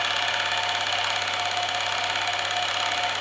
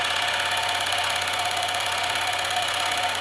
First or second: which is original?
first